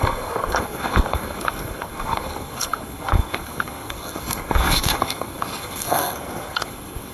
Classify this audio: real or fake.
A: fake